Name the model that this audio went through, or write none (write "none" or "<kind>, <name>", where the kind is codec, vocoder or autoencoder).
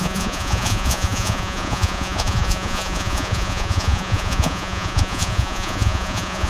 vocoder, Vocos